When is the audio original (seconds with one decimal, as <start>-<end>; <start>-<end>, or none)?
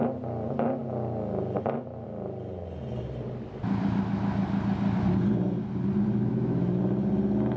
0.0-6.3; 6.8-7.6